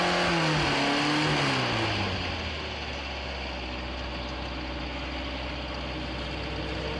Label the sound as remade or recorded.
recorded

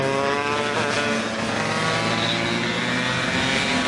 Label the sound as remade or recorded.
recorded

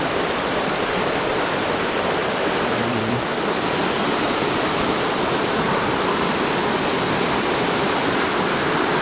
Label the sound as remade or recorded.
remade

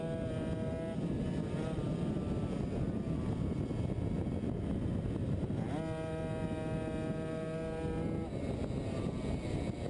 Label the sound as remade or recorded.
recorded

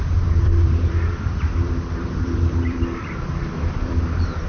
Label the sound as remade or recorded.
remade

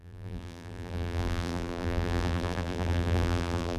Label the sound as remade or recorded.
remade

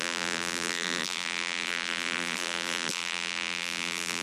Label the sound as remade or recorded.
remade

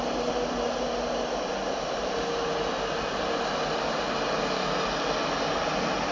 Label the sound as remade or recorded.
recorded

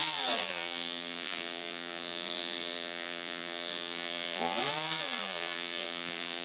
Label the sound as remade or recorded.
remade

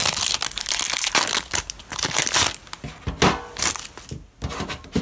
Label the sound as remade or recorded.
recorded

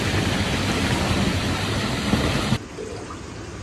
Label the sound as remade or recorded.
recorded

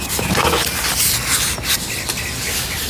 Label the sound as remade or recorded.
recorded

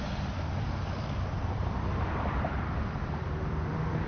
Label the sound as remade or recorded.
remade